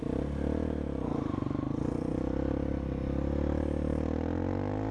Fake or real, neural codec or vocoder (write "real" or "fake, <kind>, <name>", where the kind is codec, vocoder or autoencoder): real